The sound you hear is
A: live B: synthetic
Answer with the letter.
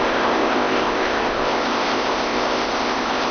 B